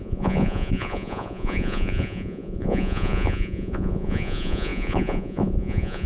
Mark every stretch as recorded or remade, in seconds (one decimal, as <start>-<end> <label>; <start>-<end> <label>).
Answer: 0.0-6.1 remade